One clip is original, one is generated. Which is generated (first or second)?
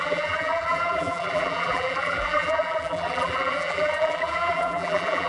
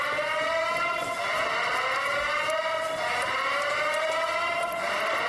first